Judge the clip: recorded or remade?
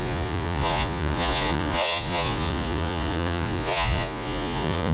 remade